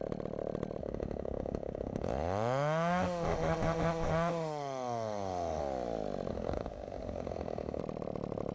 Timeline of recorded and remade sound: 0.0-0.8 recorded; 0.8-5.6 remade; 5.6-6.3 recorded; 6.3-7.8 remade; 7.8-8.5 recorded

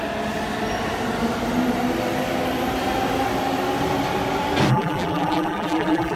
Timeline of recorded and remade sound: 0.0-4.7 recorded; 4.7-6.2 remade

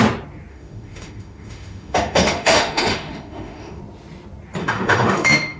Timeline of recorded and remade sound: 0.0-0.5 recorded; 0.5-3.8 remade; 3.8-4.6 recorded; 4.6-5.6 remade

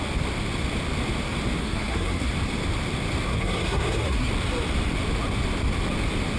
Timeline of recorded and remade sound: 0.0-1.6 recorded; 1.6-2.3 remade; 2.3-3.3 recorded; 3.3-4.3 remade; 4.3-6.4 recorded

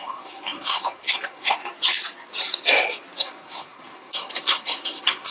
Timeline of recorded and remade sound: 0.0-1.6 remade; 1.6-3.2 recorded; 3.2-5.3 remade